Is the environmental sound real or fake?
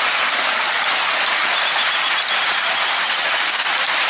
real